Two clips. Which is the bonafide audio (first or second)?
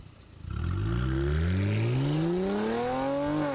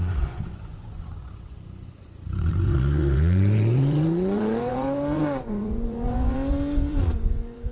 first